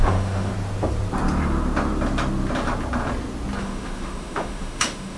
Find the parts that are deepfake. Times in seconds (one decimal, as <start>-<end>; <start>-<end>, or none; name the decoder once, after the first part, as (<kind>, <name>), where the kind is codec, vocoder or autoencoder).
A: 0.0-0.5 (autoencoder, DAC-VAE); 3.6-5.2